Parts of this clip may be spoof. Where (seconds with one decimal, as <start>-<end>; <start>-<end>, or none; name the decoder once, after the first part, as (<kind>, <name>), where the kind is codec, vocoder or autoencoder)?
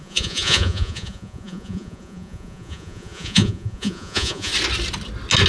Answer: 0.0-4.5 (vocoder, Vocos)